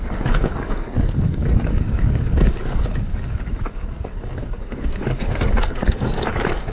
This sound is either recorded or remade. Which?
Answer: remade